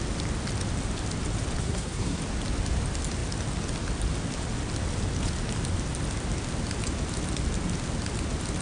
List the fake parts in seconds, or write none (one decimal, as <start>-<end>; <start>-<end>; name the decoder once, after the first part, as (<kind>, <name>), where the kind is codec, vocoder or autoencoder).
1.6-2.2 (codec, SNAC)